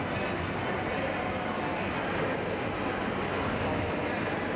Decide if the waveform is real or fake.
real